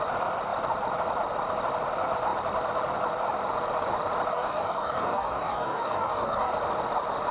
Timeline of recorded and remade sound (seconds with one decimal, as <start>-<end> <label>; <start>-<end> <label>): 0.0-4.3 recorded; 4.3-6.5 remade; 6.5-7.3 recorded